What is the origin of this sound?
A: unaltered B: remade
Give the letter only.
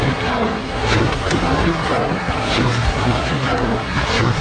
B